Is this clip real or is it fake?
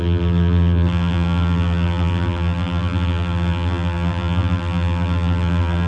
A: fake